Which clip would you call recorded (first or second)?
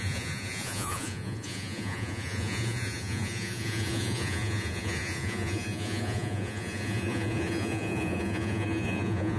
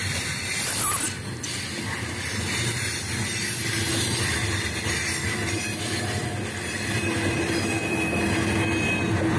second